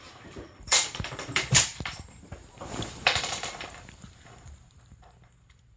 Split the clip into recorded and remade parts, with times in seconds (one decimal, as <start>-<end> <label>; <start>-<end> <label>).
0.0-5.8 remade